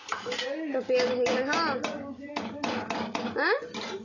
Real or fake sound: real